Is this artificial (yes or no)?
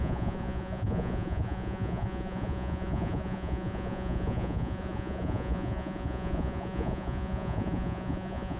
yes